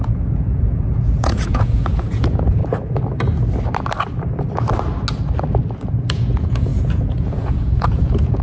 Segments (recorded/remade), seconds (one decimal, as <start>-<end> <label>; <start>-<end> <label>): 0.0-2.6 remade; 2.6-6.1 recorded; 6.1-8.4 remade